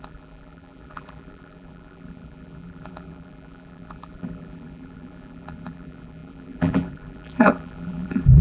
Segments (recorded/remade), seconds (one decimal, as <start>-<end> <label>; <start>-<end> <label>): 0.0-8.4 remade